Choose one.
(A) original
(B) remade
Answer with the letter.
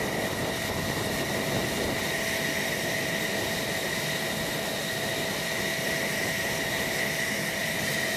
A